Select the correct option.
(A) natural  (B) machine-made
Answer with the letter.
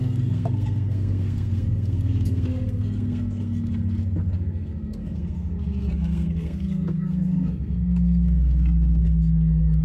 B